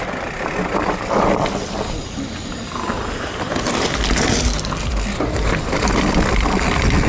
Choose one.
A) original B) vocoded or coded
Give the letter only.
A